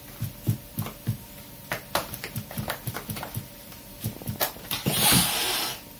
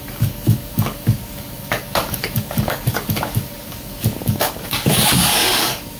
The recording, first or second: first